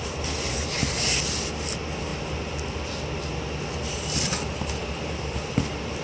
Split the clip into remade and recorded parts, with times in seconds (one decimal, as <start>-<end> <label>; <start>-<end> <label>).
0.0-6.0 recorded